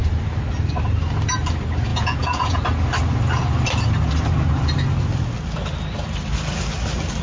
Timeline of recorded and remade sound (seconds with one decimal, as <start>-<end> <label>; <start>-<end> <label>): 0.0-1.9 recorded; 1.9-2.6 remade; 2.6-7.2 recorded